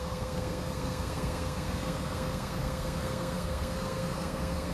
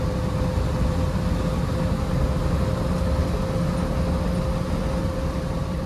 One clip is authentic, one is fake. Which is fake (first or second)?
first